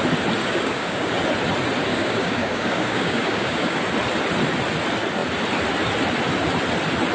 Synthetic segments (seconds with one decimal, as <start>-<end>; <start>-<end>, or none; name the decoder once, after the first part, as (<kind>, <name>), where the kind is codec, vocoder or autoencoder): 0.4-1.1 (codec, DAC); 1.9-3.8